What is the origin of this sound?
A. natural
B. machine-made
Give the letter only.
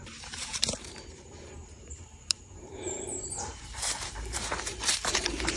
B